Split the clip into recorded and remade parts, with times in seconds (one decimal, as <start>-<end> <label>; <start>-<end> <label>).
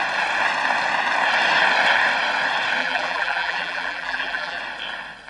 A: 0.0-2.8 recorded; 2.8-4.6 remade; 4.6-5.3 recorded